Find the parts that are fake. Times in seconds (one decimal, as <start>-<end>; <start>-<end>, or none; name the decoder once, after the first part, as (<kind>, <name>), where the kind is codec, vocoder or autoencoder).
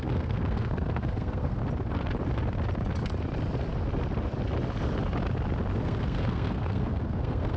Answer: 0.0-1.6 (codec, SNAC); 5.8-7.6